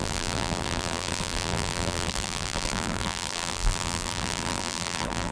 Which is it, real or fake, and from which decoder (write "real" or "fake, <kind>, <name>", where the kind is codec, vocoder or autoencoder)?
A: fake, vocoder, BigVGAN v2